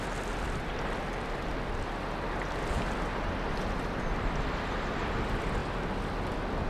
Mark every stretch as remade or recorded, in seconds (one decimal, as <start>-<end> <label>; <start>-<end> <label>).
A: 0.0-1.5 remade; 1.5-4.1 recorded; 4.1-5.6 remade; 5.6-6.7 recorded